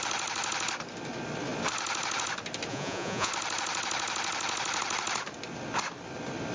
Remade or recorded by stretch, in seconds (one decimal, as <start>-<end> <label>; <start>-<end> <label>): 0.0-2.7 recorded; 2.7-3.3 remade; 3.3-6.5 recorded